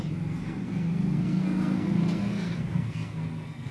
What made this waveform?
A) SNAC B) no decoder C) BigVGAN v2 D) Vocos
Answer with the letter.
A